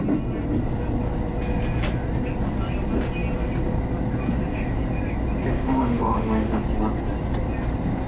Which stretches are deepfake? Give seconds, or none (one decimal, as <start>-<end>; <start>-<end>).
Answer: 5.5-6.6